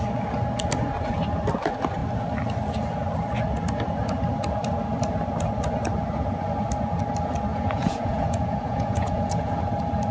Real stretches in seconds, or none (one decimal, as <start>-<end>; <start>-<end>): 0.0-7.5; 9.5-10.1